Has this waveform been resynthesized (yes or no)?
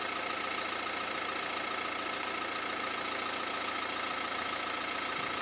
no